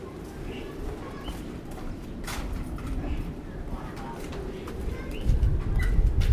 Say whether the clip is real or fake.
real